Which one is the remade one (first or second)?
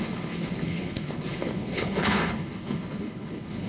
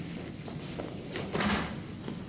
first